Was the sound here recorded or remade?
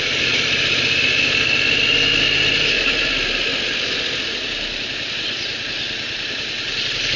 recorded